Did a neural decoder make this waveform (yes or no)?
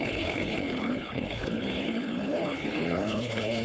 yes